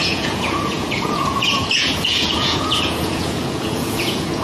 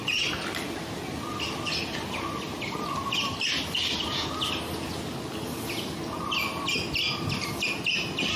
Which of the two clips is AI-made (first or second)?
first